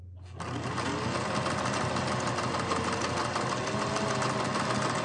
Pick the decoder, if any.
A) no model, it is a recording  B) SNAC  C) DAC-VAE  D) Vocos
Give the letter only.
A